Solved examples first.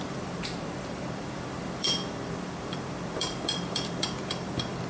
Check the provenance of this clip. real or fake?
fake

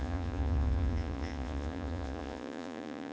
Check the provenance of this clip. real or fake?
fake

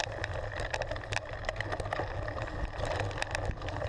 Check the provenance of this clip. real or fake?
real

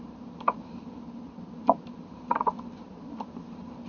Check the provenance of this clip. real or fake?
fake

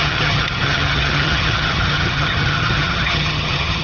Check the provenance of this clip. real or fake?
fake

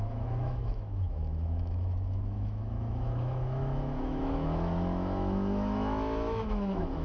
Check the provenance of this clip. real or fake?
fake